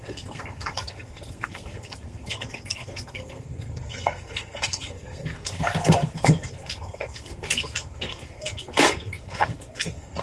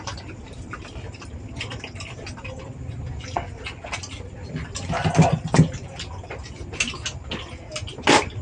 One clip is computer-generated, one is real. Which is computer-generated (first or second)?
first